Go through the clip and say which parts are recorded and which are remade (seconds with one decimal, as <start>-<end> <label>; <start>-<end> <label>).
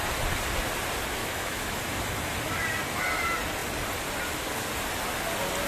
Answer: 0.0-1.2 recorded; 1.2-1.8 remade; 1.8-5.7 recorded